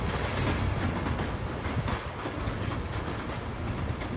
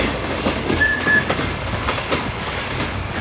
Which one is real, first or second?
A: first